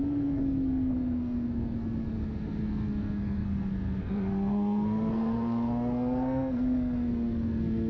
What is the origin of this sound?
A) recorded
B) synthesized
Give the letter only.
B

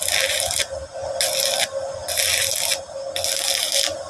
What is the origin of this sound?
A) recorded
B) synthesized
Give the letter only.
A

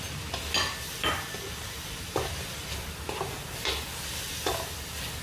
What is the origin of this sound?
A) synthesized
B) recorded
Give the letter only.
B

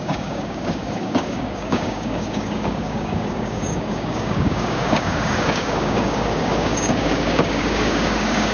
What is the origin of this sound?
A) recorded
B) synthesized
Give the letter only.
B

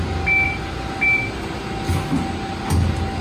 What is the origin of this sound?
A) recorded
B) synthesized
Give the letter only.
A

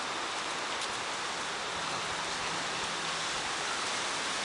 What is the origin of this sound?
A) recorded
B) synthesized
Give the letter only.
A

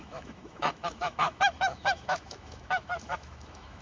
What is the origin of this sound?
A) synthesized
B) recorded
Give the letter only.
A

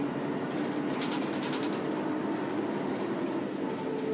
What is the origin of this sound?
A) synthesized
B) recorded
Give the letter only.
B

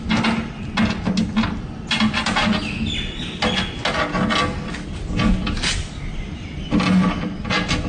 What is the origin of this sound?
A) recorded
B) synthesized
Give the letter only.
A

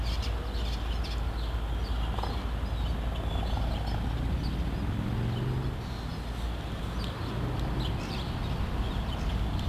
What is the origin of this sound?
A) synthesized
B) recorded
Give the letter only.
B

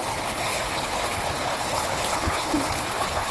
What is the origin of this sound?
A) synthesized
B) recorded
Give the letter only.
A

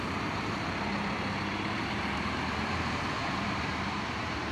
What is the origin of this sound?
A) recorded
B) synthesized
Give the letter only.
B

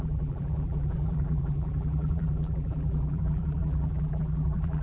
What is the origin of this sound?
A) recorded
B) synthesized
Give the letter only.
B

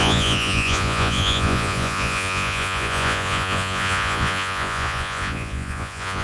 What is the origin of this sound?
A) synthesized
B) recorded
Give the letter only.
A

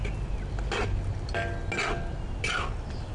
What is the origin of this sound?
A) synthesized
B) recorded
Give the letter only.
B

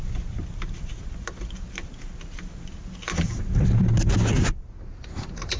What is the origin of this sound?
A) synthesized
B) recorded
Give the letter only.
B